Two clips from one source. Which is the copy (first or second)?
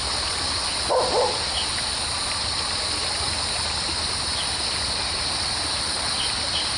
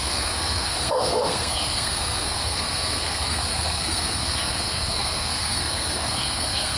second